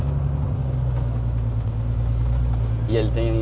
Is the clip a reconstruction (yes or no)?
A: no